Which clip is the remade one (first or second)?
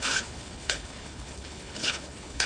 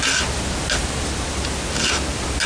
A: first